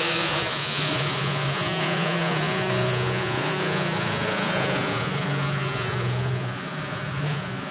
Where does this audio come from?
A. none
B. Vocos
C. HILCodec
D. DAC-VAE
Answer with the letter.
B